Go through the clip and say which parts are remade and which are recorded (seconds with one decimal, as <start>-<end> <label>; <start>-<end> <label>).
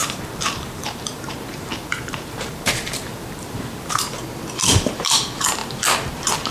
0.0-3.9 remade; 3.9-6.5 recorded